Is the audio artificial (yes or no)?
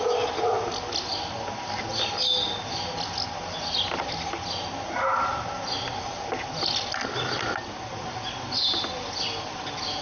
no